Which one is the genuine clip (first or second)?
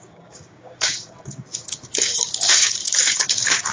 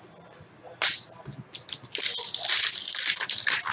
second